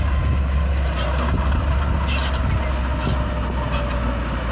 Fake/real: real